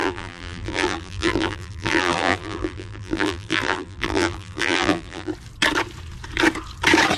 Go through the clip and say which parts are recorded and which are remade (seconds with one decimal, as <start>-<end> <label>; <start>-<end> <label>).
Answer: 0.0-5.3 remade; 5.3-7.2 recorded